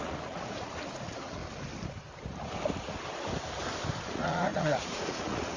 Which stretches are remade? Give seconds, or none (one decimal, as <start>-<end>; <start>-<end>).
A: 0.0-1.4; 4.0-5.6